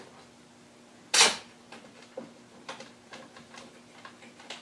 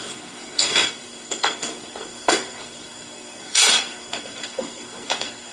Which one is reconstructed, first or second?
second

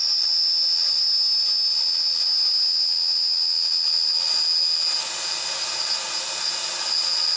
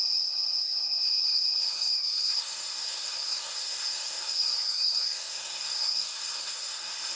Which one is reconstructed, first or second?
second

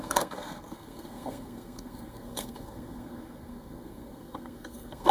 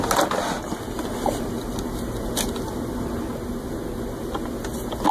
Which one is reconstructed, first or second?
first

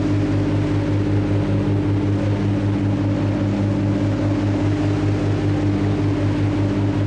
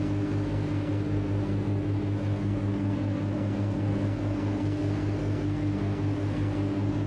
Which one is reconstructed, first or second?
second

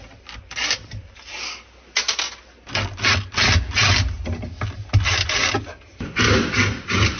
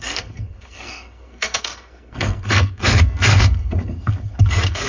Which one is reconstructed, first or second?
second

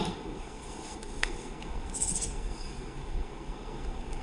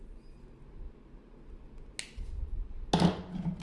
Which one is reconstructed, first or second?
first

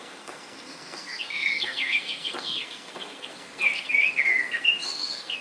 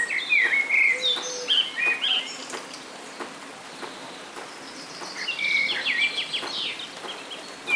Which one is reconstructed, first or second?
first